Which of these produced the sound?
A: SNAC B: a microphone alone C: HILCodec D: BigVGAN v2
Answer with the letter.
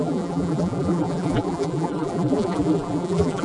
D